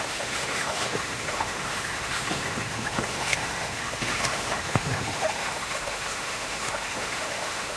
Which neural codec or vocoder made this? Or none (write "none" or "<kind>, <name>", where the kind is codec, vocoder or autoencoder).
autoencoder, DAC-VAE